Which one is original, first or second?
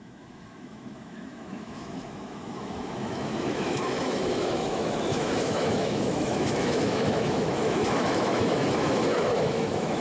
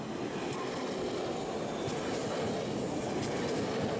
second